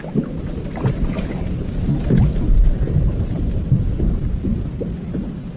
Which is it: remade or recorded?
recorded